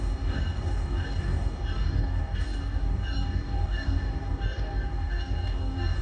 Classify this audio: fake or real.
fake